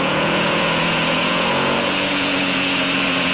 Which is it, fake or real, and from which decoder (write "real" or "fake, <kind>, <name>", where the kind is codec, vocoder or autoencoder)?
fake, vocoder, Vocos